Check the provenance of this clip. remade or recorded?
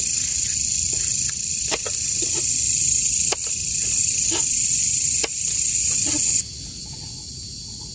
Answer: recorded